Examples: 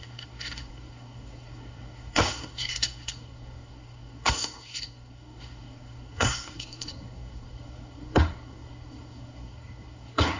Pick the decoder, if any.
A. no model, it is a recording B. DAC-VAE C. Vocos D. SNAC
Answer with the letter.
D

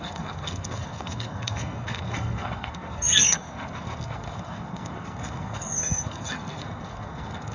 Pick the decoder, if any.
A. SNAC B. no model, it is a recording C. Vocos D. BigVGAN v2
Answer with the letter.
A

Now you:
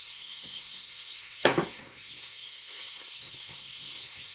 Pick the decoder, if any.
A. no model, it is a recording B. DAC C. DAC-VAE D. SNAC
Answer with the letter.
D